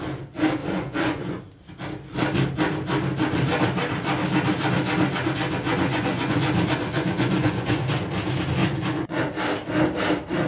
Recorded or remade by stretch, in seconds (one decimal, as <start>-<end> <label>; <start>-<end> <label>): 0.0-0.6 recorded; 0.6-1.4 remade; 1.4-5.7 recorded; 5.7-6.5 remade; 6.5-6.9 recorded; 6.9-7.8 remade; 7.8-8.6 recorded; 8.6-9.2 remade; 9.2-10.5 recorded